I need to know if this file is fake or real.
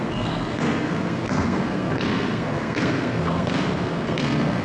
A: fake